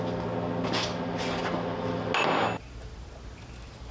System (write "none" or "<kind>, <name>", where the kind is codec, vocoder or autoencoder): none